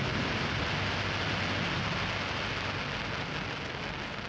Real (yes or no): yes